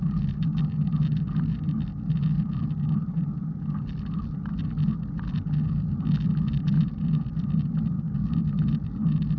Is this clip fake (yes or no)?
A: no